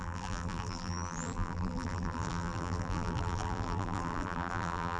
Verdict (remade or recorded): remade